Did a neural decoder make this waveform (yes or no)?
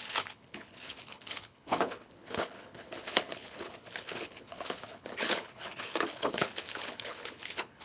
yes